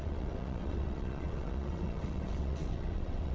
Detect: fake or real fake